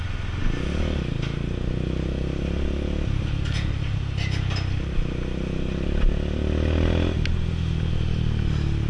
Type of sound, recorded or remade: recorded